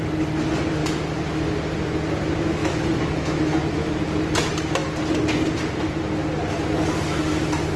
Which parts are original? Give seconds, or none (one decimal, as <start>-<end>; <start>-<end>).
0.0-2.6; 3.9-7.8

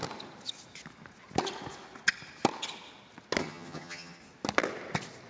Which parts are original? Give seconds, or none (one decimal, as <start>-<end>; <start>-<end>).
0.0-3.4; 4.2-5.3

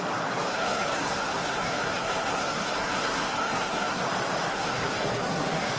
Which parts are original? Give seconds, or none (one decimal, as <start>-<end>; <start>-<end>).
0.0-0.5; 4.0-4.5

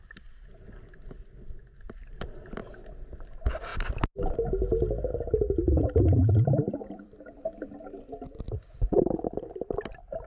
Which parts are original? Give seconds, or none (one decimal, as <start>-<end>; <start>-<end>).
3.7-5.1

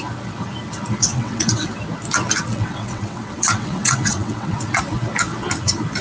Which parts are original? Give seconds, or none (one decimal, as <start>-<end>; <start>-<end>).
0.0-1.0; 1.7-2.5; 4.8-6.0

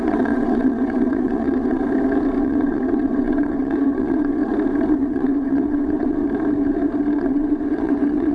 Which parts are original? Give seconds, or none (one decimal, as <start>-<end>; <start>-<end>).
1.8-2.4; 4.4-4.9; 6.2-7.2

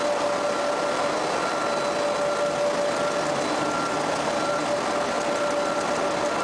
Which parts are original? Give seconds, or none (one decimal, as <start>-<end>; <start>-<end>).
0.0-6.4